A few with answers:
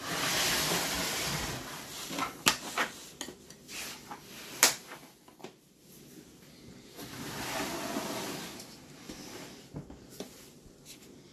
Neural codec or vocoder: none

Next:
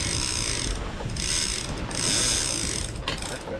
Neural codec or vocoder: none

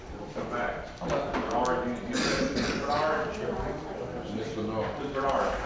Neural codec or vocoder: none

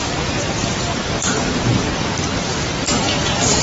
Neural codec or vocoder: none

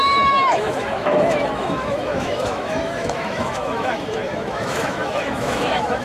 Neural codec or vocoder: autoencoder, DAC-VAE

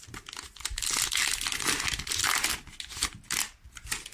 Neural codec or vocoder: none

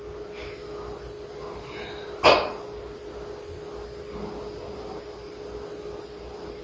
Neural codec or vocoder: none